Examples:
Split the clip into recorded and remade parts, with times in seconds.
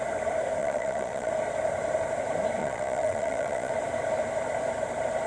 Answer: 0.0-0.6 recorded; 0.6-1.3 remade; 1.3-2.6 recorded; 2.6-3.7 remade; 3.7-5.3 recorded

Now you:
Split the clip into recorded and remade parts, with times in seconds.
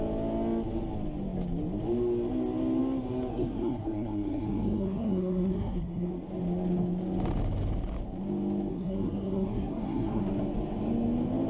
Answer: 0.0-3.3 recorded; 3.3-6.1 remade; 6.1-8.7 recorded; 8.7-10.2 remade; 10.2-11.5 recorded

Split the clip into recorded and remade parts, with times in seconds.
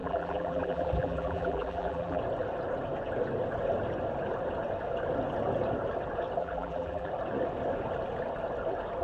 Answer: 0.0-2.2 remade; 2.2-6.4 recorded; 6.4-7.1 remade; 7.1-9.0 recorded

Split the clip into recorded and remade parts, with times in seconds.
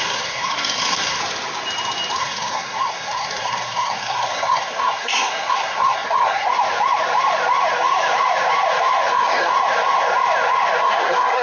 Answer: 0.0-1.2 remade; 1.2-2.2 recorded; 2.2-6.5 remade; 6.5-9.1 recorded; 9.1-9.5 remade; 9.5-10.8 recorded; 10.8-11.4 remade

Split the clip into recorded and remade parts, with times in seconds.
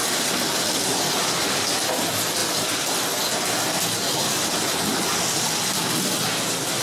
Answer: 0.0-6.8 recorded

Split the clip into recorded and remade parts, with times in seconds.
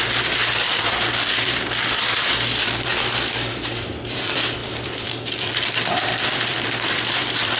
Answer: 0.0-7.6 remade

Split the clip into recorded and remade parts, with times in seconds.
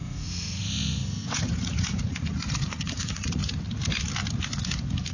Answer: 0.0-0.6 remade; 0.6-1.6 recorded; 1.6-3.4 remade; 3.4-5.1 recorded